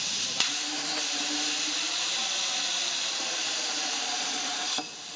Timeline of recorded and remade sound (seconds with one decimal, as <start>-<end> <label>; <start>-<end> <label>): 0.0-2.2 remade; 2.2-2.9 recorded; 2.9-5.2 remade